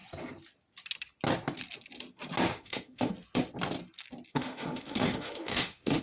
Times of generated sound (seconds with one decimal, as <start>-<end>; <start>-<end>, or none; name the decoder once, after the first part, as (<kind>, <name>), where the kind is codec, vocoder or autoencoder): 2.5-3.1 (autoencoder, DAC-VAE); 4.3-6.0